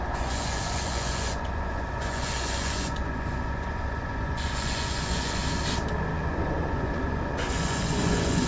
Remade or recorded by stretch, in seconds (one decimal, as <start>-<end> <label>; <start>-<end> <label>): 0.0-5.4 remade; 5.4-6.1 recorded; 6.1-8.5 remade